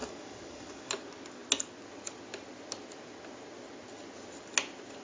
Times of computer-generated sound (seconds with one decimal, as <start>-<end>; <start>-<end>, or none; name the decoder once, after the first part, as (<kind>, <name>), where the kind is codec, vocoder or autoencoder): 0.0-0.9 (codec, DAC)